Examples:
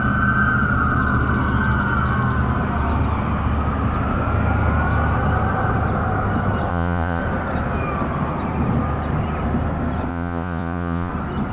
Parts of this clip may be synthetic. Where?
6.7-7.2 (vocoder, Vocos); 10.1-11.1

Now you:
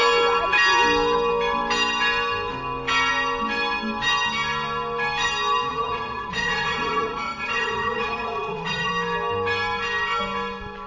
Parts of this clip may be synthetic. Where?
5.7-8.9 (vocoder, Vocos)

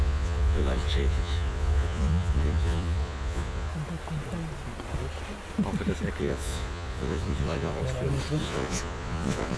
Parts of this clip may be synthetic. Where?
0.0-3.7 (vocoder, Vocos); 6.2-7.8; 8.4-9.6

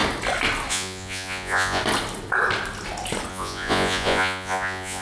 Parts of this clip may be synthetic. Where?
0.7-1.8 (vocoder, Vocos); 3.3-5.0